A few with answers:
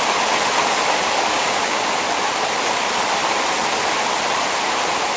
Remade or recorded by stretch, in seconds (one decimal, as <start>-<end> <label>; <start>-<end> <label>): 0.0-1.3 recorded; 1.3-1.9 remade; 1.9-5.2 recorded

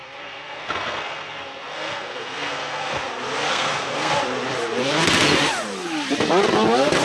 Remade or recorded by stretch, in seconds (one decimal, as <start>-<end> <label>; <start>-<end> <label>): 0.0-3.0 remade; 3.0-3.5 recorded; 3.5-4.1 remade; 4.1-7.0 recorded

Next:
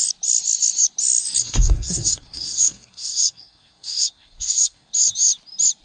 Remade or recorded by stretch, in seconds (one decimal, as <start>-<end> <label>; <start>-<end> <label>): 0.0-1.4 recorded; 1.4-4.9 remade; 4.9-5.8 recorded